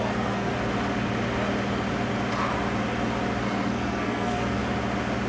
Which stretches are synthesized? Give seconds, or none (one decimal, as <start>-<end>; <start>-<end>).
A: 0.0-0.5; 3.4-4.6